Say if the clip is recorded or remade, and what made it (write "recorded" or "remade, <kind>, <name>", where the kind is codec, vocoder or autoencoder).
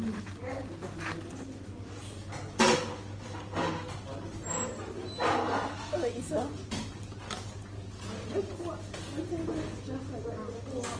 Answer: recorded